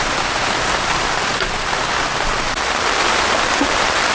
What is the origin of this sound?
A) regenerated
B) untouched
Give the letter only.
B